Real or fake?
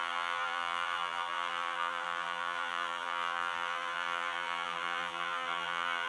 fake